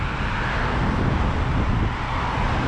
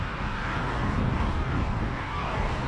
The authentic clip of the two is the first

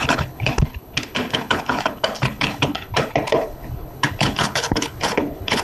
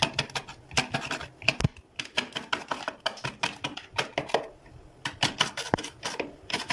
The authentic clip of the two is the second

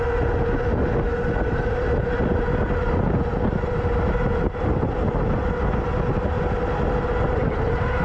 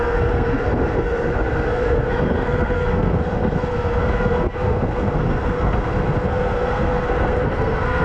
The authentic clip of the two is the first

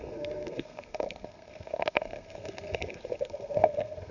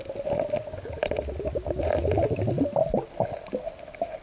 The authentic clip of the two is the second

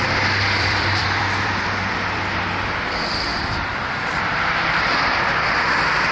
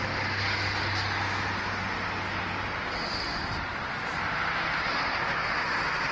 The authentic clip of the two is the second